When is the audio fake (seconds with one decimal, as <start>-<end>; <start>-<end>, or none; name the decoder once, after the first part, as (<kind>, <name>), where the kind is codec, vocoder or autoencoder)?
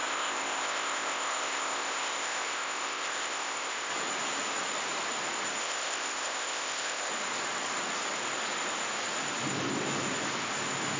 0.0-3.9 (codec, ZipCodec); 5.6-7.1